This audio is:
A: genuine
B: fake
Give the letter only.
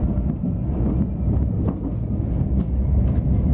A